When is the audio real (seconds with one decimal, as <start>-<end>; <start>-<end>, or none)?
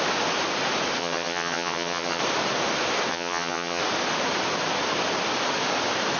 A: 0.0-1.0; 2.2-3.1; 3.8-6.2